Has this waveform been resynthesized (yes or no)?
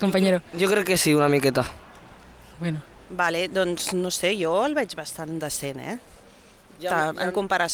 no